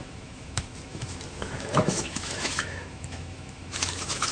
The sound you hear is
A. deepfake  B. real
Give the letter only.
A